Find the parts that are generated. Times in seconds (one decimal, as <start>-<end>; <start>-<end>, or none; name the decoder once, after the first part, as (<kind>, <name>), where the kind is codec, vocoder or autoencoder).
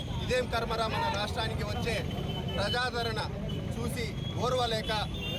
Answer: none